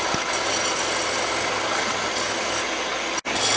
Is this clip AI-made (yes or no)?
no